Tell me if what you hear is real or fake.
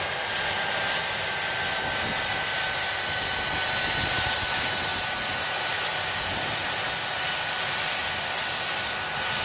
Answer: real